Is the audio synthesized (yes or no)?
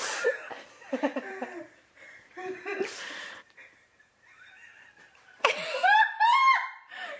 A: yes